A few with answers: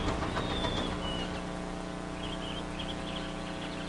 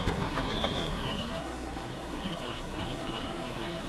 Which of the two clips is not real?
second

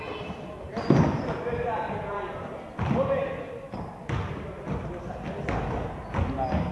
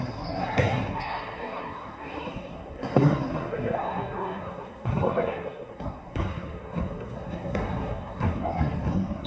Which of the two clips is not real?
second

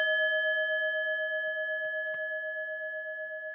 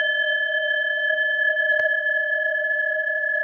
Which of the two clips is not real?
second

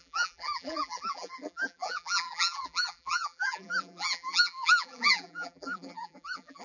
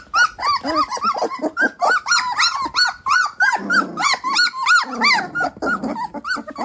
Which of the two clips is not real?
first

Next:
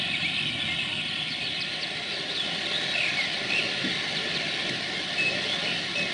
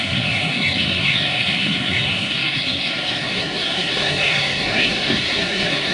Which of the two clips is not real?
second